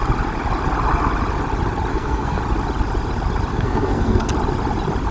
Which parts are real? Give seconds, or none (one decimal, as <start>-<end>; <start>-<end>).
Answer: 0.0-1.9; 2.4-3.5; 4.3-5.1